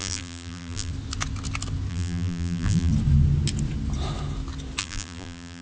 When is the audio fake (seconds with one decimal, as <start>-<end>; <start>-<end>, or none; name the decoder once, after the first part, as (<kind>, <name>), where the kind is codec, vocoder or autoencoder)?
0.0-0.9 (vocoder, BigVGAN v2); 1.9-2.9; 4.8-5.6